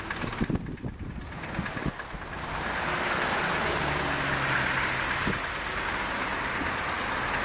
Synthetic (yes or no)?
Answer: no